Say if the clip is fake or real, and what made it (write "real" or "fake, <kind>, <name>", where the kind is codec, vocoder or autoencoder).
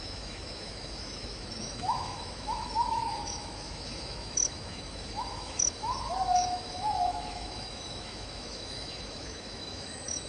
fake, autoencoder, DAC-VAE